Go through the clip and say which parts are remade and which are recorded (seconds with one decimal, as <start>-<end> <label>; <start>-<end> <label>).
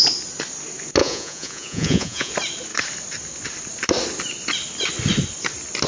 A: 0.0-1.0 recorded; 1.0-2.3 remade; 2.3-5.9 recorded